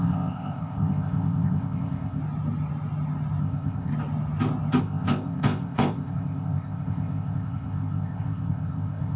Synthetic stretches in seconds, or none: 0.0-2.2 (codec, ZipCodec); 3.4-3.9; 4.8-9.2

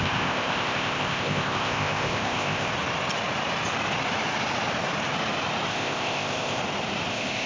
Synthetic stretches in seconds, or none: 0.0-2.7 (codec, ZipCodec); 5.7-6.6; 7.1-7.5